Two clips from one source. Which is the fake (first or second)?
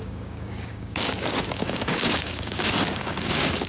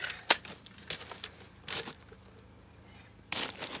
first